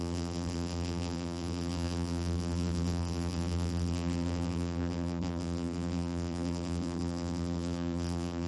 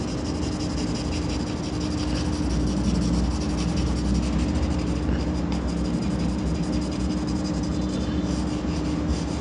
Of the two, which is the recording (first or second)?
second